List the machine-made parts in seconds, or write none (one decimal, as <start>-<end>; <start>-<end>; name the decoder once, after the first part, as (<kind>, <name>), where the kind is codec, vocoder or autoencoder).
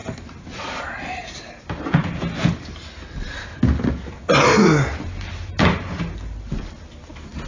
none